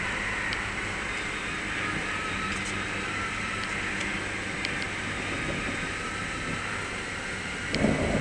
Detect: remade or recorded recorded